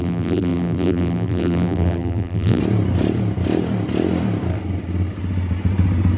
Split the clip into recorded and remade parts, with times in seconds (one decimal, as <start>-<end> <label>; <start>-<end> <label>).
0.0-2.6 remade; 2.6-6.2 recorded